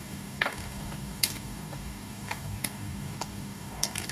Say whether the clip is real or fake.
fake